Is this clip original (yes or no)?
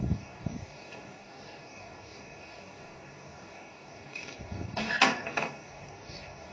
no